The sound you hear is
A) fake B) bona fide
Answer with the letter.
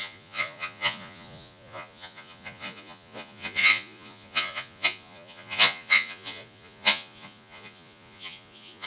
A